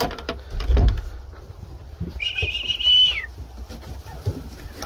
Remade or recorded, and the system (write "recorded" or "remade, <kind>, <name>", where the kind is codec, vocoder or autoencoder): recorded